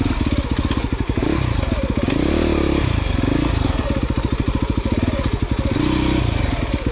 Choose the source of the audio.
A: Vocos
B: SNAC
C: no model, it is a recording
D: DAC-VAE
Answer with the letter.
C